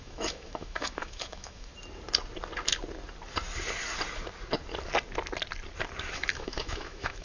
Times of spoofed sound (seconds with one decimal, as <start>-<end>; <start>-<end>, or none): 0.0-1.7; 6.0-7.2